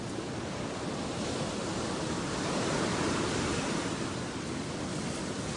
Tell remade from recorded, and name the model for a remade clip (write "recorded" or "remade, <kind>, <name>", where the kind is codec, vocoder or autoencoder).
recorded